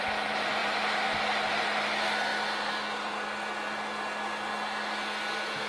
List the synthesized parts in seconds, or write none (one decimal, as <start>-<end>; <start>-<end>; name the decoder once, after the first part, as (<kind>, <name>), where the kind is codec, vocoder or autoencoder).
none